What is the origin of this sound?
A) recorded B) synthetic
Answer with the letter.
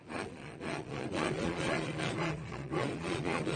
B